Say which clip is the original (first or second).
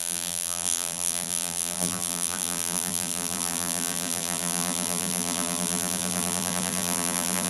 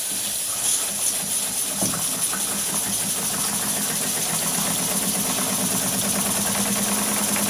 second